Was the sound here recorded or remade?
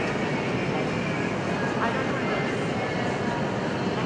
recorded